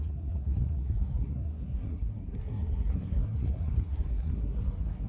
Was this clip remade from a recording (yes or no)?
yes